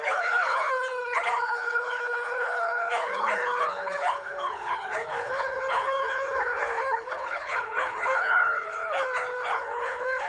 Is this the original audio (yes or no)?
no